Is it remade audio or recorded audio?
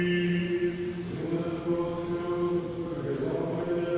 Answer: recorded